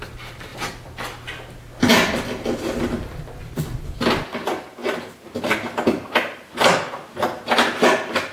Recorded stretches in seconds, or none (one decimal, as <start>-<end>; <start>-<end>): 0.0-8.3